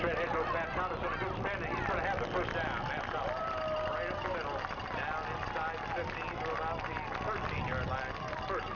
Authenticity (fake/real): real